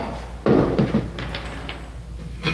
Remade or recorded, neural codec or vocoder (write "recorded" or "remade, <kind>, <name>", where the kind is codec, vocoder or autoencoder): recorded